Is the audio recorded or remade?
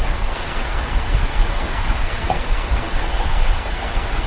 remade